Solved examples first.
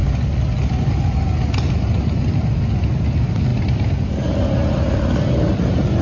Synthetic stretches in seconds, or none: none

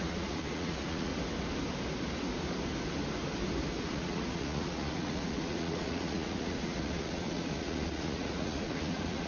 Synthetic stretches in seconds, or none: 0.0-1.1 (vocoder, Vocos); 3.8-9.3

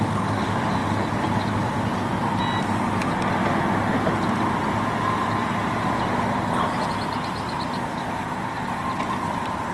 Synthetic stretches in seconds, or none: none